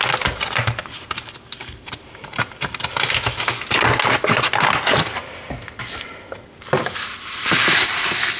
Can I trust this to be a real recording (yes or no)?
yes